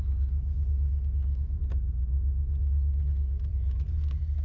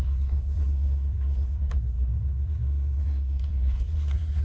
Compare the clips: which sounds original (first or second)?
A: first